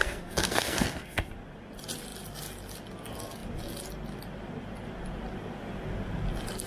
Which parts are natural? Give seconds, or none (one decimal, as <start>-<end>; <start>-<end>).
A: 1.3-6.7

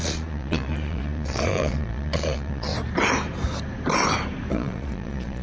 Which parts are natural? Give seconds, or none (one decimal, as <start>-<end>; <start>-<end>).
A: 2.7-4.5

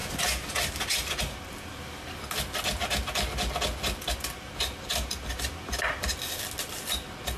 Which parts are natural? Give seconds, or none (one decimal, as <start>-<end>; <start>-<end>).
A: 0.0-7.4

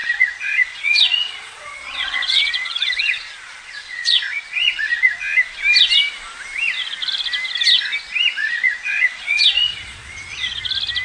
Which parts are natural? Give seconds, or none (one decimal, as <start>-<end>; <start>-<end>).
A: 5.2-8.4; 10.6-11.0

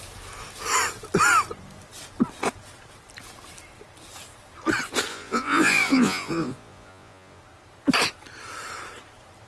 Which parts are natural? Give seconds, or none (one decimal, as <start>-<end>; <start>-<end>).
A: 0.0-5.1; 7.4-9.5

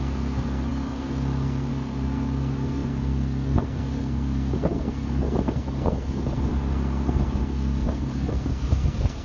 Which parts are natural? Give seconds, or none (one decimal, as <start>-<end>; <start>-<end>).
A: none